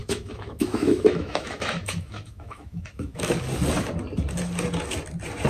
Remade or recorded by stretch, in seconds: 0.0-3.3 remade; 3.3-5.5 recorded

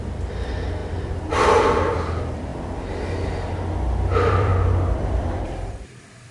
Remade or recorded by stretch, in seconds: 0.0-0.8 remade; 0.8-1.3 recorded; 1.3-2.5 remade; 2.5-3.5 recorded; 3.5-4.5 remade; 4.5-5.0 recorded; 5.0-6.3 remade

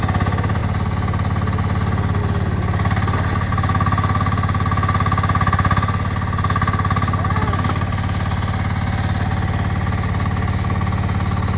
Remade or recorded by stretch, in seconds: 0.0-11.6 recorded

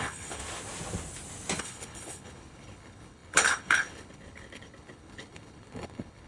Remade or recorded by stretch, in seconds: 0.0-0.4 remade; 0.4-1.6 recorded; 1.6-6.3 remade

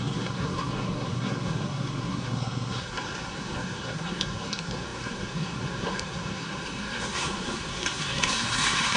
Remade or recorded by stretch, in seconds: 0.0-9.0 remade

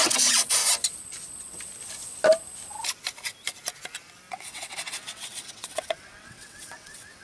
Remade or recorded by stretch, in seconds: 0.0-0.6 remade; 0.6-4.3 recorded; 4.3-7.2 remade